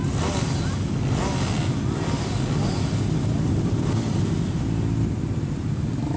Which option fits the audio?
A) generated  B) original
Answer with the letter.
B